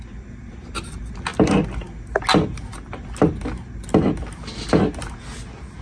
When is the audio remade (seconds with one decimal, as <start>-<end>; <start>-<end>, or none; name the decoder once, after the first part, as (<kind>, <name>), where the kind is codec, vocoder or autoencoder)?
none